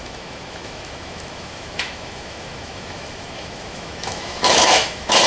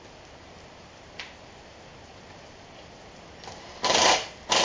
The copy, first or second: first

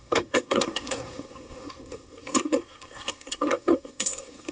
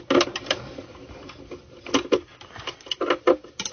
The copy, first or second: first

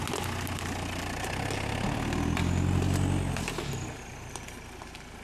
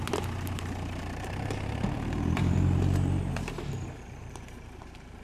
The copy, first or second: second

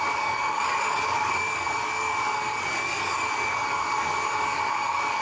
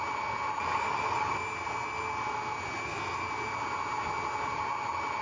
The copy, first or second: first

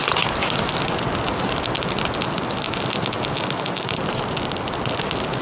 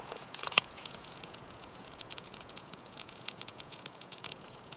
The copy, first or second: second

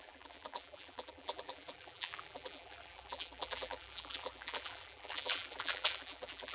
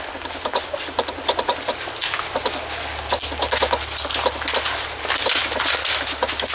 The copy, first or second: first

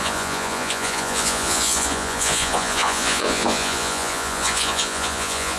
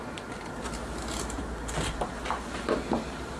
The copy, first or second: first